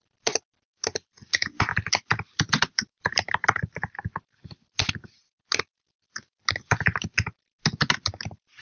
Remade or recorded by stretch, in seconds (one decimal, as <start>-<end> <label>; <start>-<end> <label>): 0.0-1.7 recorded; 1.7-3.9 remade; 3.9-8.6 recorded